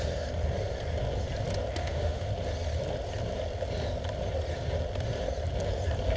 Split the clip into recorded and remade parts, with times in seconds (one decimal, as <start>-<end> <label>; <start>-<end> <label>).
0.0-1.8 recorded; 1.8-2.3 remade; 2.3-6.2 recorded